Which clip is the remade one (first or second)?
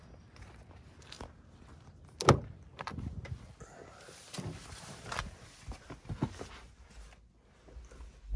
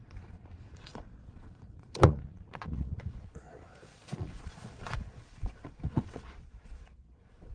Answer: second